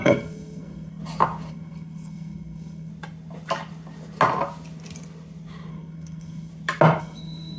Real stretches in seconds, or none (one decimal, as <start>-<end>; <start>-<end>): 1.0-1.5; 2.9-5.7; 6.5-7.0